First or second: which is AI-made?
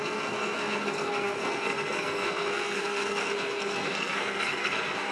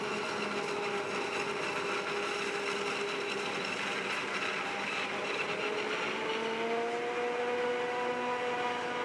first